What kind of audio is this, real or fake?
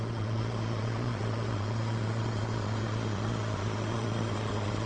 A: fake